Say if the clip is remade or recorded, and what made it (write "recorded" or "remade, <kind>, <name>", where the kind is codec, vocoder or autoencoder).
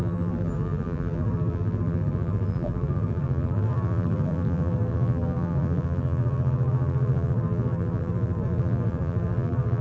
remade, vocoder, BigVGAN v2